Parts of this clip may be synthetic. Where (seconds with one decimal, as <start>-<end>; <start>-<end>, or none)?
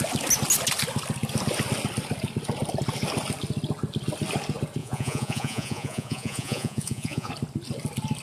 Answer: 4.8-7.3